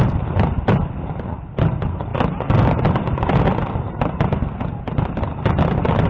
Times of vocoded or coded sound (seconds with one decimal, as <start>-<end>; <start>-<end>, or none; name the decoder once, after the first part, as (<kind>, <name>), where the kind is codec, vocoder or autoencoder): none